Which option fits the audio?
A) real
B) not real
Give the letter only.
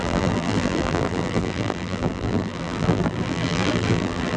B